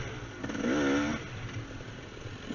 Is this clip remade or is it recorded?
recorded